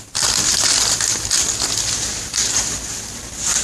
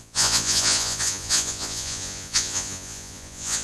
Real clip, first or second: first